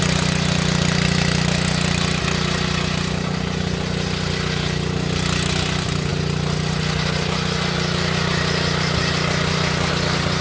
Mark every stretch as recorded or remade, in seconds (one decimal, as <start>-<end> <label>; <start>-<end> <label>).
0.0-10.4 recorded